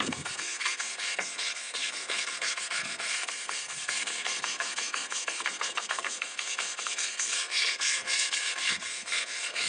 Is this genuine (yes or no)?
no